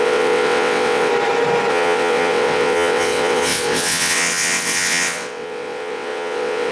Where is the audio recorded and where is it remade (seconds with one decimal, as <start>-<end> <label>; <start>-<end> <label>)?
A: 0.0-1.1 remade; 1.1-1.7 recorded; 1.7-6.7 remade